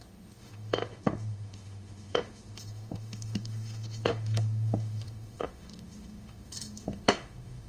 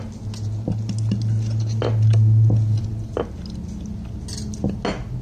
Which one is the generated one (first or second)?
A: first